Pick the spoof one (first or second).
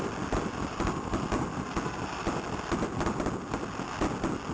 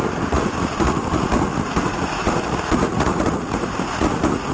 second